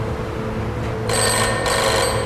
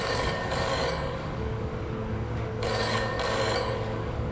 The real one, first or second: first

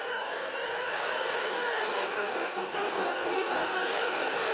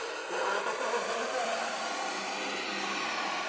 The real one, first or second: second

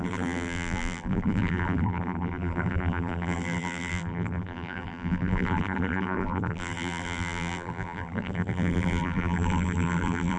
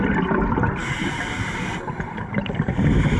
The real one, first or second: second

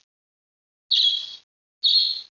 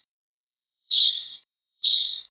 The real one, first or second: first